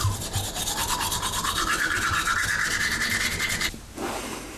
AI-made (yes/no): no